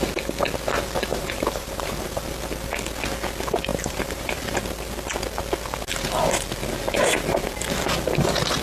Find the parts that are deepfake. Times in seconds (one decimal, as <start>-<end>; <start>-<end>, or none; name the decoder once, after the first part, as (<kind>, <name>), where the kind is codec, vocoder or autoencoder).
1.1-2.2 (vocoder, BigVGAN v2); 3.7-4.6